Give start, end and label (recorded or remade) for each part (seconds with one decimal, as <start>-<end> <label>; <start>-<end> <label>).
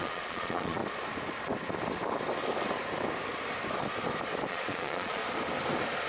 0.0-0.8 remade; 0.8-4.5 recorded; 4.5-5.2 remade; 5.2-6.1 recorded